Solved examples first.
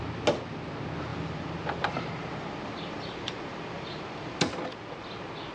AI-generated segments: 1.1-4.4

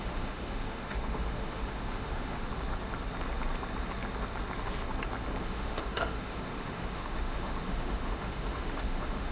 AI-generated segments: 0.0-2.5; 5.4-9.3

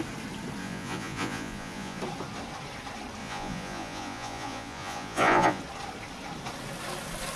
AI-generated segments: 0.6-2.0; 3.2-5.6

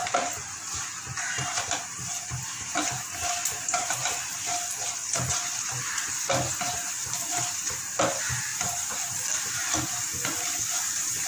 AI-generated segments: 1.2-4.0; 6.6-8.5; 9.4-10.1; 10.6-11.3

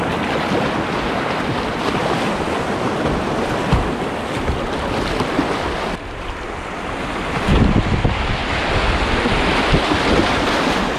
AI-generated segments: none

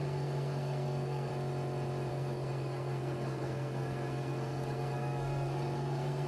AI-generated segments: 0.0-1.3; 2.1-6.3